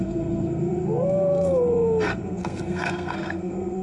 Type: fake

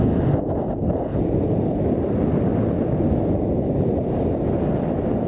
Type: real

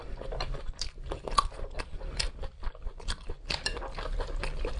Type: real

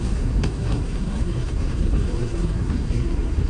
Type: fake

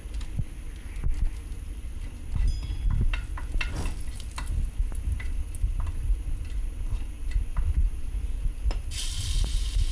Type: real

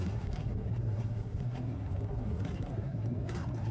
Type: fake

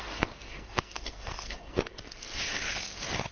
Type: fake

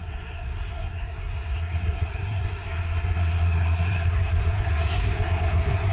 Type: fake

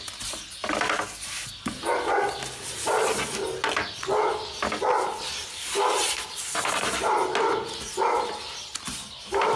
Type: real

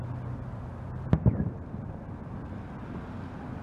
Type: real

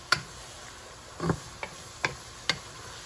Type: real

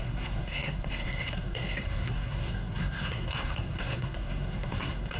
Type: fake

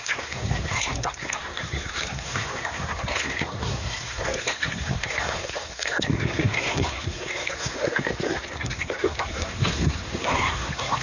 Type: fake